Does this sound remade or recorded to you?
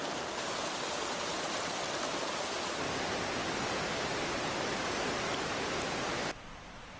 recorded